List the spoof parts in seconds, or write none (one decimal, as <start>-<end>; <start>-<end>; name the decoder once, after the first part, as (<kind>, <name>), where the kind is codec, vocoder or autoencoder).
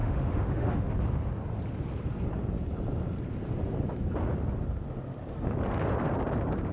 0.0-0.9 (autoencoder, DAC-VAE)